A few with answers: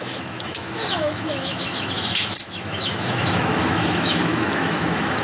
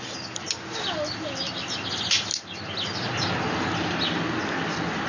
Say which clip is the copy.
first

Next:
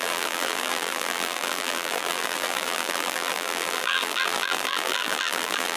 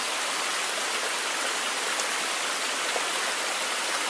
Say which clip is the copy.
first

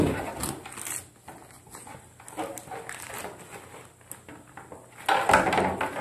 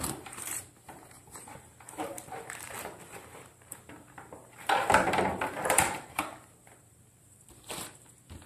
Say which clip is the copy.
second